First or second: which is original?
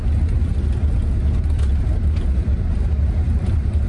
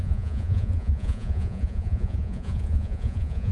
first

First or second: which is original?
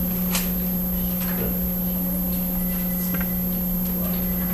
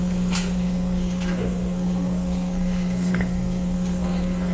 first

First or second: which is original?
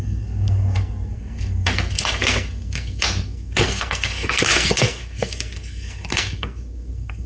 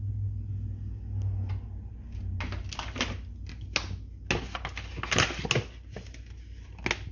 second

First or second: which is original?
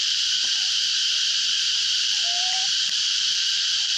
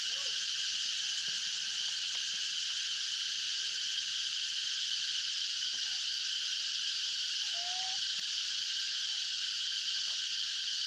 second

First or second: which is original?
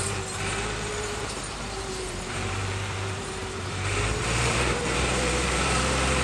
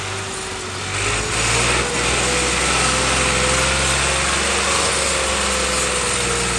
second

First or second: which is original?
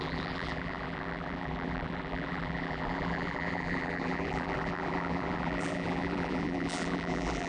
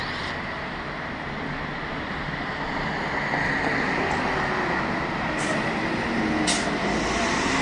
second